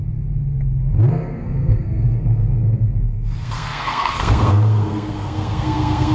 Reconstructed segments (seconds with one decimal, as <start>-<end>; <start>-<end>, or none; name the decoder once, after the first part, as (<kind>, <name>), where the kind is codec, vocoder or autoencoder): 1.1-6.1 (codec, SNAC)